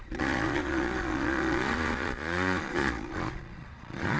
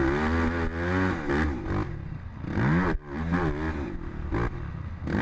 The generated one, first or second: first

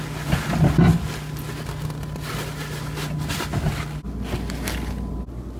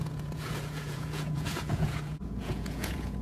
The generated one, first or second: second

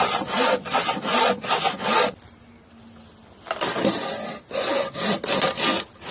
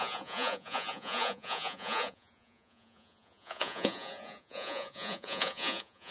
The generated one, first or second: second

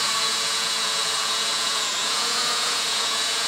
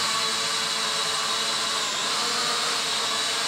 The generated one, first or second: first